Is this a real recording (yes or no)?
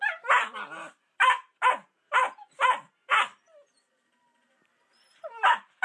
yes